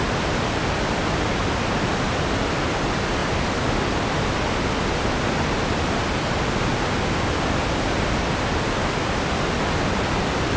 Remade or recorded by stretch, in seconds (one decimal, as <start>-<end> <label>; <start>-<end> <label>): 0.0-10.6 recorded